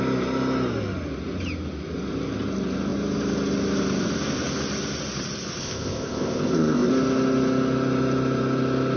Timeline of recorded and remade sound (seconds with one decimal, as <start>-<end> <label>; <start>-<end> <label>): 0.0-5.6 recorded; 5.6-6.9 remade; 6.9-9.0 recorded